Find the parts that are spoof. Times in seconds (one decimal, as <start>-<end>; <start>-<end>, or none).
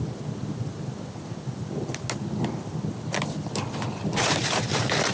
none